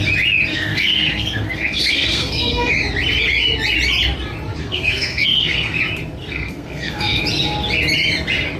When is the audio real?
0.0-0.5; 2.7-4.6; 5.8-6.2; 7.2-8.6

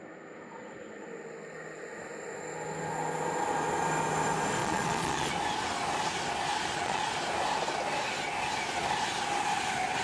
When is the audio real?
0.0-4.6; 5.3-6.7; 7.2-10.0

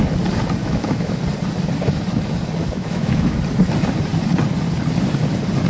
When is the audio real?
0.0-0.6; 1.2-2.6; 3.4-5.7

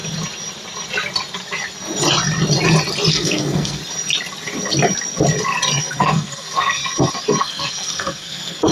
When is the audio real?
0.0-3.1; 3.8-5.8; 6.8-7.4